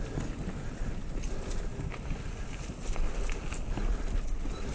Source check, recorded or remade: recorded